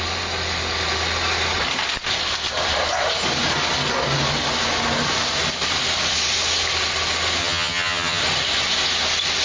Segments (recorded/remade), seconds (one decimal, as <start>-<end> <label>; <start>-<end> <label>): 0.0-7.4 recorded; 7.4-8.2 remade; 8.2-9.4 recorded